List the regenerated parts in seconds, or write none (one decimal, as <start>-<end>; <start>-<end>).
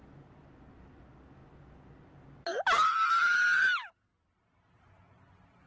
none